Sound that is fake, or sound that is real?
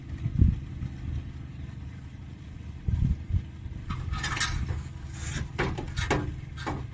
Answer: real